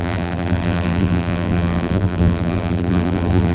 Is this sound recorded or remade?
remade